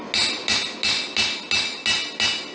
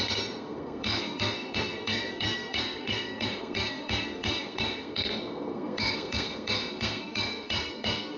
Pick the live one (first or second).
first